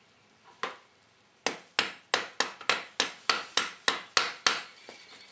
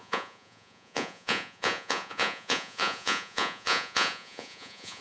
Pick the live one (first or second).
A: first